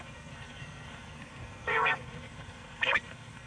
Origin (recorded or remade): remade